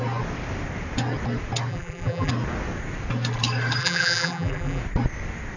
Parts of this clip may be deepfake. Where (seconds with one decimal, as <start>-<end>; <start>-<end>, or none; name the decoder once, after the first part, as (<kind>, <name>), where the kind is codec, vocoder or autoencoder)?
1.7-2.3 (vocoder, BigVGAN v2); 3.8-4.8